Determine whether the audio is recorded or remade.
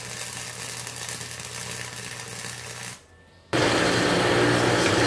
recorded